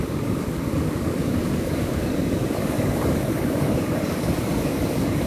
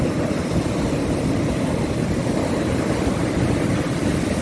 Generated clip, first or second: first